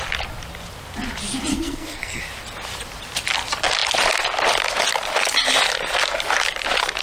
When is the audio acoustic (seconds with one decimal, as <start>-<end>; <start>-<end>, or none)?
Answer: 0.0-1.5; 2.2-7.0